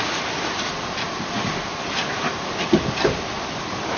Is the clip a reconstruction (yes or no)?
no